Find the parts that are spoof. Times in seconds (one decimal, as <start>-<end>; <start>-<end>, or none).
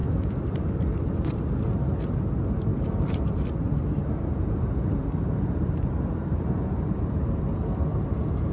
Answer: 0.0-0.7; 2.7-7.4; 7.9-8.5